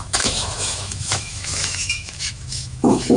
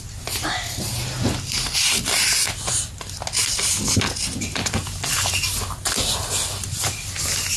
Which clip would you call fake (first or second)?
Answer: first